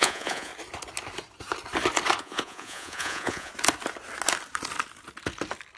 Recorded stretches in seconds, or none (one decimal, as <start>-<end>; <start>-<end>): 0.5-2.2; 3.5-5.8